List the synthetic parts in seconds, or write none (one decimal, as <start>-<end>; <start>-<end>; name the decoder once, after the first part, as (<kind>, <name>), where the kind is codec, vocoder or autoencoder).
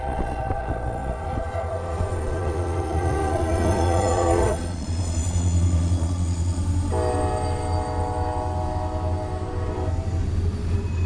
0.0-6.6 (vocoder, Vocos)